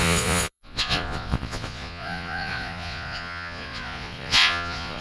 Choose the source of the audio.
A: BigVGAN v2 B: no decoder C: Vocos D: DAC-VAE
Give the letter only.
C